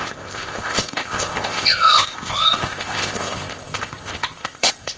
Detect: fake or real fake